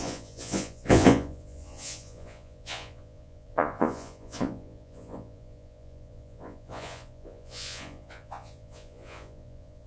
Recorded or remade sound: remade